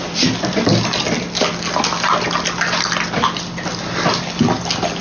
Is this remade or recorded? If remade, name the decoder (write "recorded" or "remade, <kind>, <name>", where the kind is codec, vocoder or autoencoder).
recorded